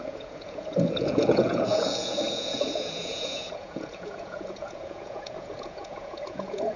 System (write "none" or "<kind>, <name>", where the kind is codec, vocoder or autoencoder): vocoder, Vocos